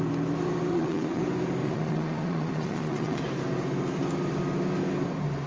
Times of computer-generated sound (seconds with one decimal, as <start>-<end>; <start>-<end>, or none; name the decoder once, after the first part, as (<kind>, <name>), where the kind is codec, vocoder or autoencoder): 0.7-1.2 (vocoder, Vocos); 1.6-3.2

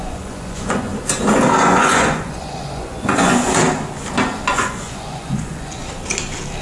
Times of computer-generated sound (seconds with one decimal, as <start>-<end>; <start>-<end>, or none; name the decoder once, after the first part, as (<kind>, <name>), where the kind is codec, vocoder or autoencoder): 0.0-0.9 (vocoder, Vocos); 1.6-3.6; 4.5-5.8

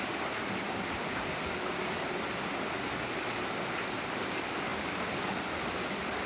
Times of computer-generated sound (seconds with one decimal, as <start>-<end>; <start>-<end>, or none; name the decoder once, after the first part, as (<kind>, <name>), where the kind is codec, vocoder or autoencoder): none

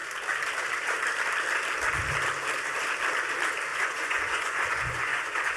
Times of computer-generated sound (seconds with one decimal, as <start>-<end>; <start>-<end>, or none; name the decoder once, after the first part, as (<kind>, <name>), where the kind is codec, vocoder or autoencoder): 3.7-5.6 (vocoder, Vocos)

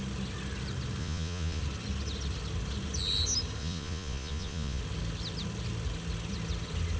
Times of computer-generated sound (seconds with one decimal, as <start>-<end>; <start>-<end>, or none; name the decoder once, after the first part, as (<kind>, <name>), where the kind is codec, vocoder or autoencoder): 1.0-1.6 (vocoder, Vocos); 3.6-4.8

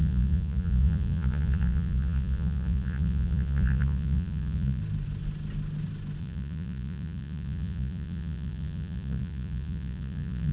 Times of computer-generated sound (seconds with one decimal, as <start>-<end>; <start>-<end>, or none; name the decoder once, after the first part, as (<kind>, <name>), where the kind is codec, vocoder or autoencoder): 0.0-4.8 (vocoder, Vocos); 6.2-10.5

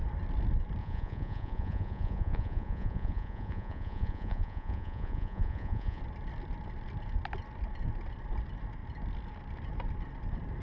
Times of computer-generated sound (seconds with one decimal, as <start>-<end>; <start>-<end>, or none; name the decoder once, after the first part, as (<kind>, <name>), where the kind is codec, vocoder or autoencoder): 0.8-6.0 (vocoder, Vocos)

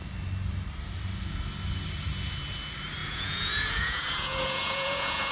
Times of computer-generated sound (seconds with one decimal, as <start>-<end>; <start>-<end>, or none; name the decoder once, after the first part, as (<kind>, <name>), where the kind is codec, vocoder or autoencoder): 3.0-5.3 (vocoder, Vocos)